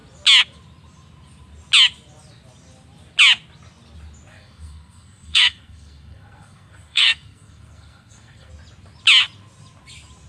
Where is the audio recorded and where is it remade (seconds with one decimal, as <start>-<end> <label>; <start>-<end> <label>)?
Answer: 0.0-4.3 recorded; 4.3-8.5 remade; 8.5-10.3 recorded